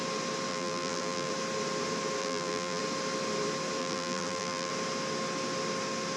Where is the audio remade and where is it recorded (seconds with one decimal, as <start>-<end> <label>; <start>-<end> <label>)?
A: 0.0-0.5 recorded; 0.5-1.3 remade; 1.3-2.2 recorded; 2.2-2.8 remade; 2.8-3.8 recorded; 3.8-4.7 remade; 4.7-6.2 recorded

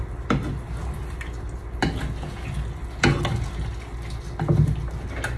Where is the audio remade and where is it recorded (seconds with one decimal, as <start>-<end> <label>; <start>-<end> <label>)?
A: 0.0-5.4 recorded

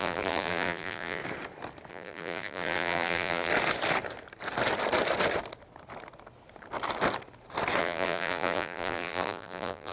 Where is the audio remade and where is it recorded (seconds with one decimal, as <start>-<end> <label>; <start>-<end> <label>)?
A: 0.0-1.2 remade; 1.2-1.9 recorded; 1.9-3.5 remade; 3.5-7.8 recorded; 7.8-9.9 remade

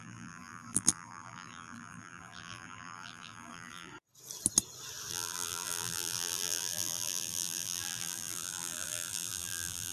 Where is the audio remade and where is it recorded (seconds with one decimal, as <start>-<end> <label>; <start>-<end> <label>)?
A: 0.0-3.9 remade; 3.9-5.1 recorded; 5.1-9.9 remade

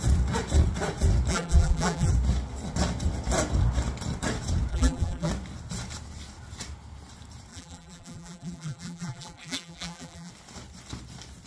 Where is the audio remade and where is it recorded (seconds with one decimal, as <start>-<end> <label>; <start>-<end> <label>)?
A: 0.0-1.3 recorded; 1.3-2.1 remade; 2.1-4.7 recorded; 4.7-5.3 remade; 5.3-7.5 recorded; 7.5-10.3 remade; 10.3-11.5 recorded

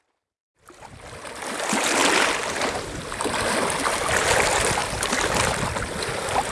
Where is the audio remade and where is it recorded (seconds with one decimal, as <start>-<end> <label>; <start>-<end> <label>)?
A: 0.0-2.0 recorded; 2.0-4.3 remade; 4.3-4.8 recorded; 4.8-6.5 remade

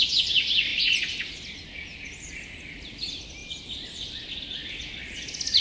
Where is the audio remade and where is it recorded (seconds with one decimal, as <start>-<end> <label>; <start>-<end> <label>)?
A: 0.0-5.6 recorded